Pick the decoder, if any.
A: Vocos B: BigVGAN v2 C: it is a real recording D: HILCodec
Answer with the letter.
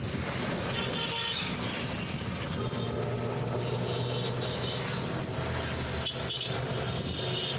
C